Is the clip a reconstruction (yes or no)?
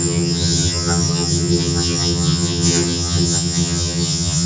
yes